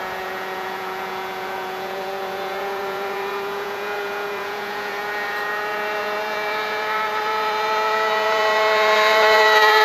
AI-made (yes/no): yes